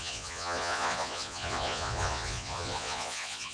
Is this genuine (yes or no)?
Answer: no